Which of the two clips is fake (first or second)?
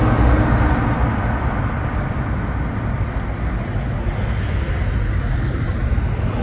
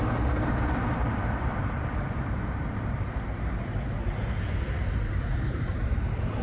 second